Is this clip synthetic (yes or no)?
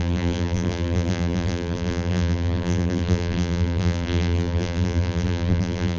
yes